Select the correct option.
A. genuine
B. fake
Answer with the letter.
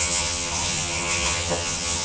B